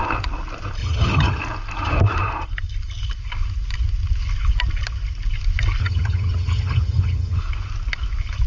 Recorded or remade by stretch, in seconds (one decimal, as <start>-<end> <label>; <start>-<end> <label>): 0.0-0.8 recorded; 0.8-1.4 remade; 1.4-5.8 recorded; 5.8-7.4 remade; 7.4-8.5 recorded